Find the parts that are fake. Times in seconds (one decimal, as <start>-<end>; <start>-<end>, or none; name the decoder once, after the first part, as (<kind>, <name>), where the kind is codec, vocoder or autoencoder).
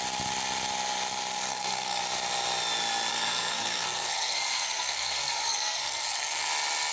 1.5-2.0 (codec, SNAC); 3.1-6.5